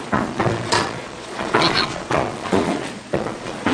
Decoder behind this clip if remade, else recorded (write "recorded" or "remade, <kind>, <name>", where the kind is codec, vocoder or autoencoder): remade, vocoder, Vocos